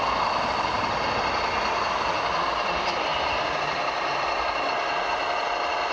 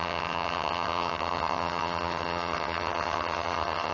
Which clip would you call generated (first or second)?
second